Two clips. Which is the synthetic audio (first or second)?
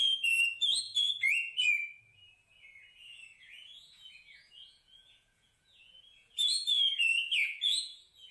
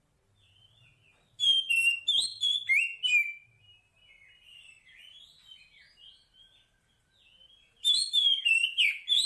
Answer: first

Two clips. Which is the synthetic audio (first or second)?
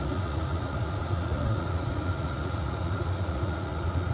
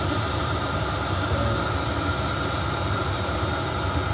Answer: first